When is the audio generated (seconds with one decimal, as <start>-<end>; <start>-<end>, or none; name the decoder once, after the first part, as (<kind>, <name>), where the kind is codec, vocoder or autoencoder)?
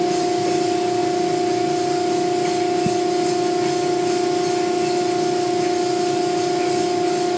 none